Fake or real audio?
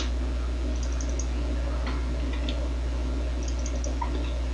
real